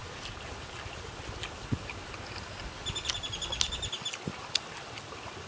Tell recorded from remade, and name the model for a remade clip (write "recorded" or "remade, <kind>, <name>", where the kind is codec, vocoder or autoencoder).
recorded